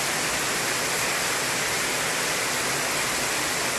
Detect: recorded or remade recorded